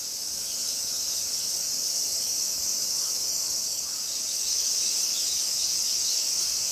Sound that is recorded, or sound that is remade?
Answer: remade